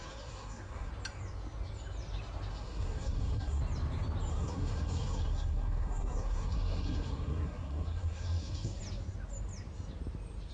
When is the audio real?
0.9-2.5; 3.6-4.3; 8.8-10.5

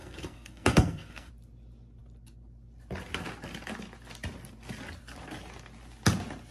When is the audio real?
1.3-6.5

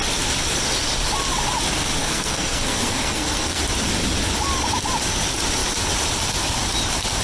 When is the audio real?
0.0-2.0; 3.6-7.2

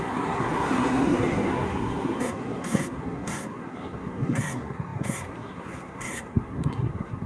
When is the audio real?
none